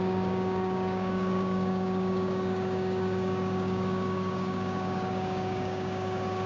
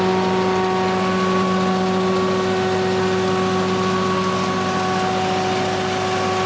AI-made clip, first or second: first